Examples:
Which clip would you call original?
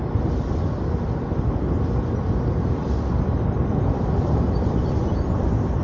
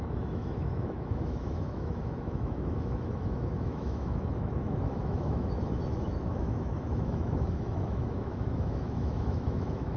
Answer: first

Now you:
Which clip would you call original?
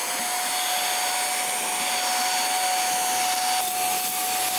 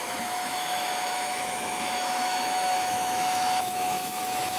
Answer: first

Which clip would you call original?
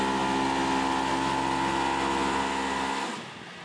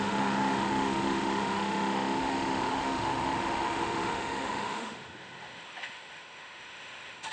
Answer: first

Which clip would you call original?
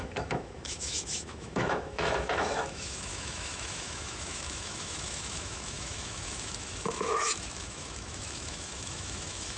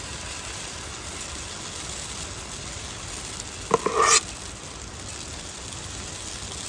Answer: second